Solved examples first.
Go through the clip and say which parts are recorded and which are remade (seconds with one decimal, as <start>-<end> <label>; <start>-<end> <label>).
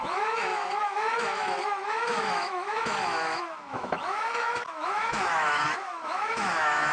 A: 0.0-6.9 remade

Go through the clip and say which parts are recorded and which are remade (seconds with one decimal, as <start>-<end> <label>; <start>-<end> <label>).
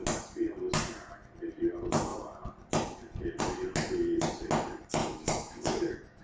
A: 0.0-5.0 recorded; 5.0-6.2 remade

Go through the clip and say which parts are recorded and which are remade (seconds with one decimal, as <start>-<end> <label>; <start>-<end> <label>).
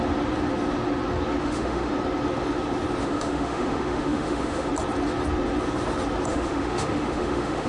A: 0.0-1.4 recorded; 1.4-1.9 remade; 1.9-3.0 recorded; 3.0-4.7 remade; 4.7-6.3 recorded; 6.3-7.7 remade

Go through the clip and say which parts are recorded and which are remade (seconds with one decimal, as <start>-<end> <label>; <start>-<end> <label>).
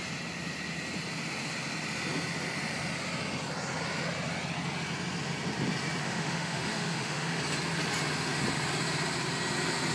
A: 0.0-6.0 recorded; 6.0-7.4 remade; 7.4-9.9 recorded